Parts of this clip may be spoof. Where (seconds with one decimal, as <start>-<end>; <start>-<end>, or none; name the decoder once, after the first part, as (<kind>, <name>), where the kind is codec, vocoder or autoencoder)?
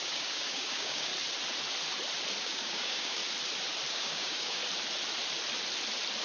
0.0-1.1 (codec, DAC); 2.4-3.2; 3.9-4.6